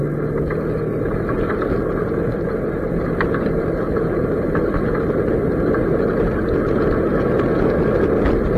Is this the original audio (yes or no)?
yes